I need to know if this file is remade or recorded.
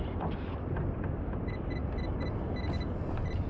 recorded